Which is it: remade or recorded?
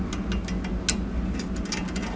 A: recorded